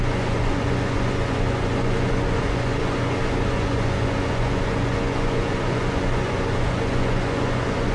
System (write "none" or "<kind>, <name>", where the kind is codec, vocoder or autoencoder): vocoder, Vocos